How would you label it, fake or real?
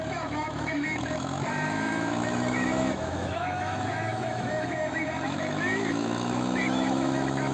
fake